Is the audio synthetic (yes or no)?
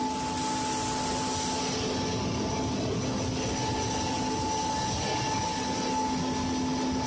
no